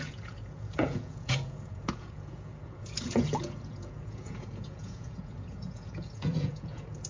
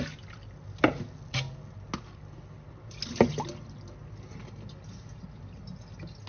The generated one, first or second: first